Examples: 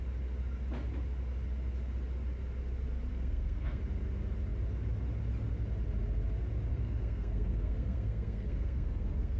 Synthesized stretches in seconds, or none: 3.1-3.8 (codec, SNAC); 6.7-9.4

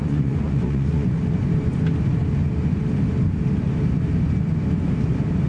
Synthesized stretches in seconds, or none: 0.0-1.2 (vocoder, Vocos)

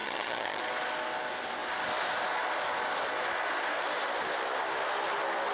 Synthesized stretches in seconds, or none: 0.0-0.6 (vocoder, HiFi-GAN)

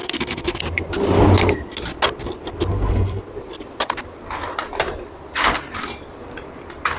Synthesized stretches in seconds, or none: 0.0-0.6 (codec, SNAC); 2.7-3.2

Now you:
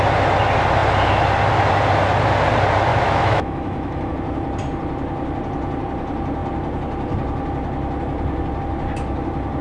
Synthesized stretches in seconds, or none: 2.9-4.1 (autoencoder, DAC-VAE)

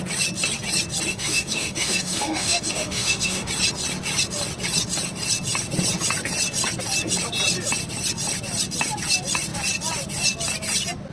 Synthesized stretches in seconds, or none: 1.1-3.5 (autoencoder, DAC-VAE)

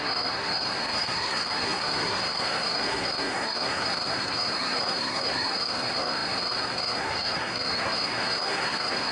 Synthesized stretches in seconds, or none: 0.0-9.1 (codec, SNAC)